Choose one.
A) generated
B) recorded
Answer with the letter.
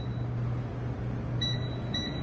B